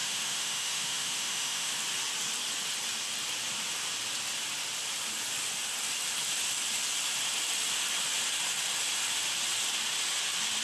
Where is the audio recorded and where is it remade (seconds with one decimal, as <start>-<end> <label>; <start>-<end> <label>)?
0.0-1.7 remade; 1.7-10.6 recorded